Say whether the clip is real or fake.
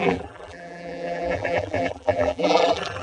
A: fake